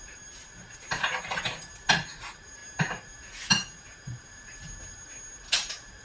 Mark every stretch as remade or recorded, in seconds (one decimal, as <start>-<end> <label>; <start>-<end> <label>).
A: 0.0-6.0 recorded